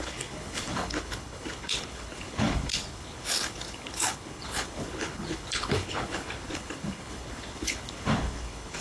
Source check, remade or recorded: remade